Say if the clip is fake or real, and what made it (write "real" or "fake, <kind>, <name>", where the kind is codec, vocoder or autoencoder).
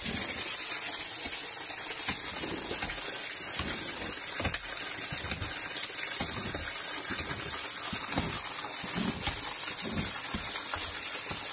real